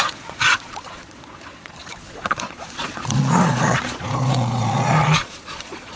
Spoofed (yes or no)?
yes